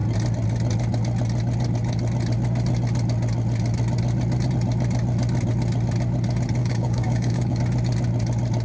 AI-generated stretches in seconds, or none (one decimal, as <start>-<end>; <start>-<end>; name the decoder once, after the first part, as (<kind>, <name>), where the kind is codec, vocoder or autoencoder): 6.6-7.6 (codec, DAC)